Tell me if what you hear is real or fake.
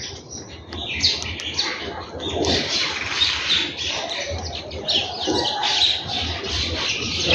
real